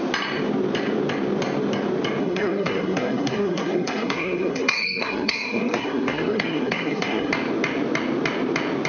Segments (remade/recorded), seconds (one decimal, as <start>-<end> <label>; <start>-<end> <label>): 0.0-2.2 recorded; 2.2-7.3 remade; 7.3-8.9 recorded